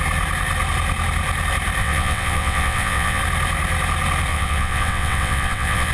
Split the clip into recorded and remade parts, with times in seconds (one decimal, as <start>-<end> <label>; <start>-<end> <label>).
0.0-1.8 recorded; 1.8-3.2 remade; 3.2-4.3 recorded; 4.3-5.9 remade